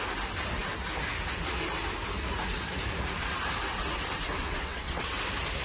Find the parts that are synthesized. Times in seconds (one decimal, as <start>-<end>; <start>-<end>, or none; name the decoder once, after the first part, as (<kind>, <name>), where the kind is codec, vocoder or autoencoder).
4.4-5.1 (vocoder, WaveNeXt)